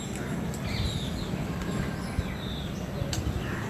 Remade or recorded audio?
recorded